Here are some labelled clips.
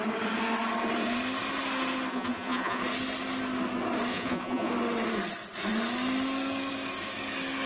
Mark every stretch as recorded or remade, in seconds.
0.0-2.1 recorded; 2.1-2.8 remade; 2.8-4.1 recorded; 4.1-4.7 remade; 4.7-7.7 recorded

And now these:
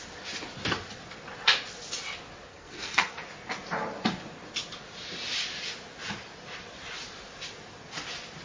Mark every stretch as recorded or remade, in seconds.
0.0-2.5 recorded; 2.5-3.2 remade; 3.2-8.4 recorded

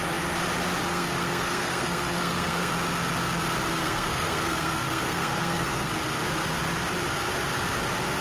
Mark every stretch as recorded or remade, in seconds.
0.0-0.9 recorded; 0.9-2.7 remade; 2.7-3.8 recorded; 3.8-5.9 remade; 5.9-8.2 recorded

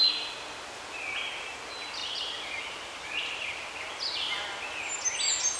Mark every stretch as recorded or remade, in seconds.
0.0-5.6 recorded

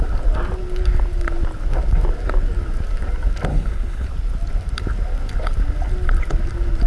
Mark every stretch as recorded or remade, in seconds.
0.0-3.5 recorded; 3.5-4.1 remade; 4.1-6.9 recorded